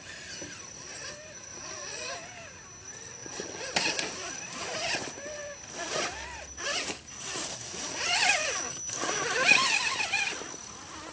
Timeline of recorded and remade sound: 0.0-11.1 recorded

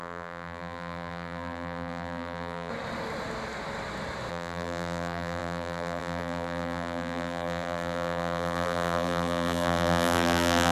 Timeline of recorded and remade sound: 0.0-2.7 remade; 2.7-4.3 recorded; 4.3-10.7 remade

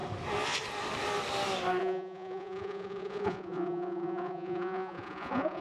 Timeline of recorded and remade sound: 0.0-1.8 recorded; 1.8-5.6 remade

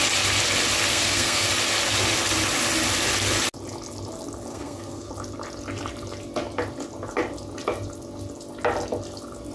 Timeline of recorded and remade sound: 0.0-0.9 recorded; 0.9-1.5 remade; 1.5-4.5 recorded; 4.5-5.1 remade; 5.1-9.5 recorded

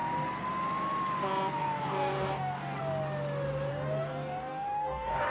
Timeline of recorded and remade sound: 0.0-1.6 recorded; 1.6-2.8 remade; 2.8-3.7 recorded; 3.7-5.3 remade